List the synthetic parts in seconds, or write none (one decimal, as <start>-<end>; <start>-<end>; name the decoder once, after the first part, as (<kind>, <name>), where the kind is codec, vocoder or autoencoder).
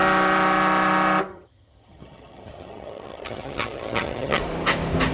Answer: 1.3-4.4 (vocoder, HiFi-GAN)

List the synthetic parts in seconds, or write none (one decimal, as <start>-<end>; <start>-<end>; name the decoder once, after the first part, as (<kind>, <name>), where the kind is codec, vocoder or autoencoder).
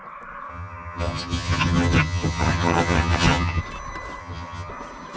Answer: 0.5-3.6 (vocoder, HiFi-GAN); 4.2-4.7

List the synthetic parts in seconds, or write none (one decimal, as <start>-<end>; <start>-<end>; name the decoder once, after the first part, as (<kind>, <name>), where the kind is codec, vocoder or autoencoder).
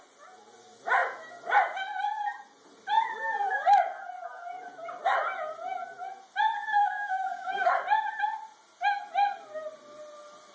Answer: 6.8-7.7 (codec, DAC)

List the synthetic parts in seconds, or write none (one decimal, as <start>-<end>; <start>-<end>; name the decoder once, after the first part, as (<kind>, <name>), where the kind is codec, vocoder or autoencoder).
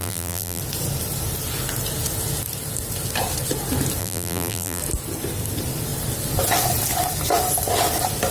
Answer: 0.0-0.6 (vocoder, BigVGAN v2); 4.0-4.8